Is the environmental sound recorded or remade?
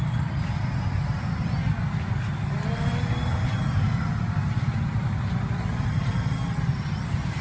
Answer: recorded